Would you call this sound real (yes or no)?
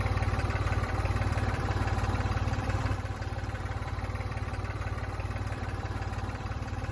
no